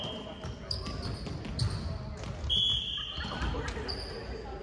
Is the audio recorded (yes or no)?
yes